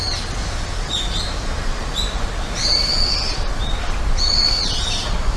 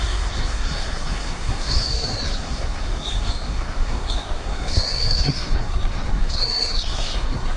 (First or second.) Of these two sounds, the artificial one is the second